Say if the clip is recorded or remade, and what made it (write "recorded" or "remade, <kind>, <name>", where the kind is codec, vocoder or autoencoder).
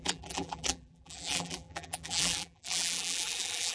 remade, vocoder, BigVGAN v2